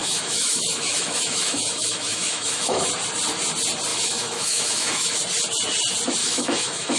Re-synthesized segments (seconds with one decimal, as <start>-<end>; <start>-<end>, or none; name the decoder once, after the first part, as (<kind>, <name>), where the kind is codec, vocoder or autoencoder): 0.0-2.9 (autoencoder, DAC-VAE); 3.9-5.2; 6.2-7.0